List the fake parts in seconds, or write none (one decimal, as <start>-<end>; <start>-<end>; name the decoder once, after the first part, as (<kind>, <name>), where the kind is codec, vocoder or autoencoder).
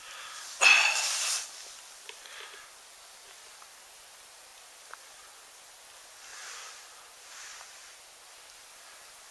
none